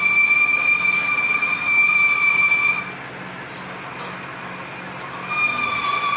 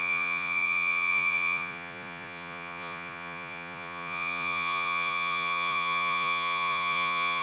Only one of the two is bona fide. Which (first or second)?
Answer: first